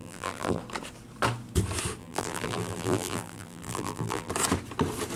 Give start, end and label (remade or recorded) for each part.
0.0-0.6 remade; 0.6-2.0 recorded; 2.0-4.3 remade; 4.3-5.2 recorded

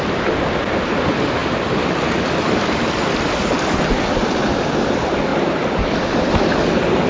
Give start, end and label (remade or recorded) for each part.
0.0-7.1 recorded

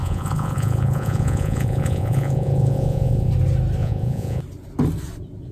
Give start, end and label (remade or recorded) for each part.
0.0-3.3 remade; 3.3-3.8 recorded; 3.8-4.4 remade; 4.4-5.5 recorded

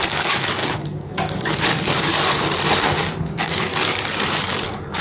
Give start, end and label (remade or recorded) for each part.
0.0-1.7 remade; 1.7-3.0 recorded; 3.0-3.7 remade; 3.7-4.4 recorded; 4.4-5.0 remade

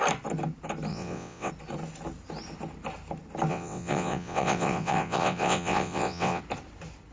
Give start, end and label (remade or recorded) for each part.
0.0-0.9 recorded; 0.9-1.5 remade; 1.5-3.5 recorded; 3.5-6.4 remade; 6.4-7.1 recorded

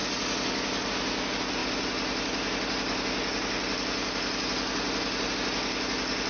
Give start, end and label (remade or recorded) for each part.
0.0-6.3 recorded